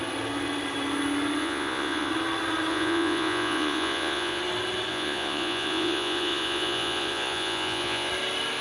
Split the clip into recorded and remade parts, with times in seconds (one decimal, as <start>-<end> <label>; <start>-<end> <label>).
0.0-1.4 recorded; 1.4-2.1 remade; 2.1-2.7 recorded; 2.7-4.4 remade; 4.4-4.9 recorded; 4.9-8.1 remade; 8.1-8.6 recorded